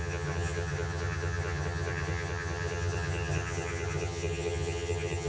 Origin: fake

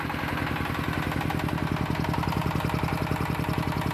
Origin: real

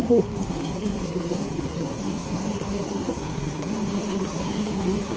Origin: fake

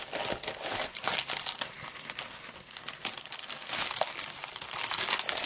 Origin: real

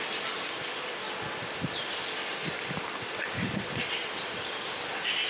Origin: real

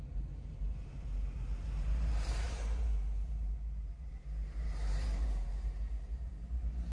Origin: fake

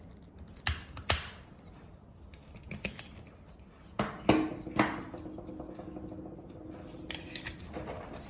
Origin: real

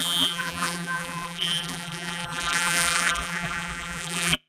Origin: fake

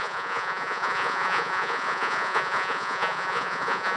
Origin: fake